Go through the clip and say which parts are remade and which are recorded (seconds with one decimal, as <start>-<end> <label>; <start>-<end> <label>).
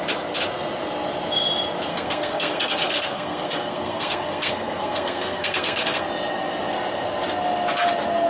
0.0-1.9 recorded; 1.9-6.1 remade; 6.1-8.3 recorded